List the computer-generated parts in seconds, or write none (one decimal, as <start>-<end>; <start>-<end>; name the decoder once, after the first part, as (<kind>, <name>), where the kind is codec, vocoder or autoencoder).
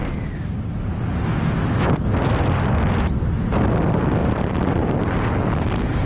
4.2-4.9 (vocoder, BigVGAN v2)